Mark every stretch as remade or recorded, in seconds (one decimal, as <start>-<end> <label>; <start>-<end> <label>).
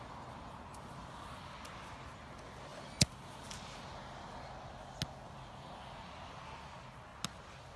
0.0-7.8 recorded